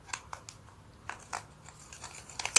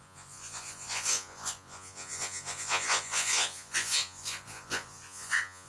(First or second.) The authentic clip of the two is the first